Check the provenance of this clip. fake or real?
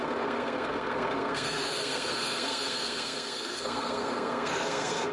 fake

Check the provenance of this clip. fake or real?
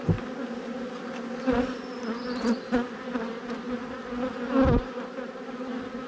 real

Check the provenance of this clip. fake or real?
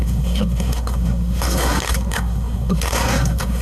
fake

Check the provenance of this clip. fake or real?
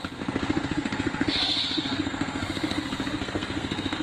fake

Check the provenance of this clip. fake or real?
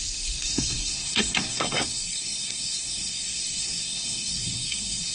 fake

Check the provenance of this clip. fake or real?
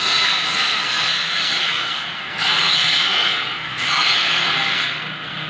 fake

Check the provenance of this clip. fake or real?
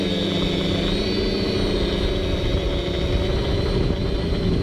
real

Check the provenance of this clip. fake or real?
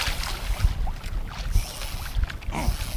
real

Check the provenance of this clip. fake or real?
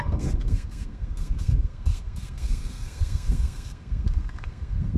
fake